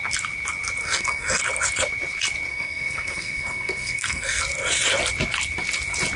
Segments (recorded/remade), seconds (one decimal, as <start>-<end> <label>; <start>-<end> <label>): 0.0-0.8 recorded; 0.8-1.4 remade; 1.4-2.5 recorded; 2.5-4.4 remade; 4.4-6.2 recorded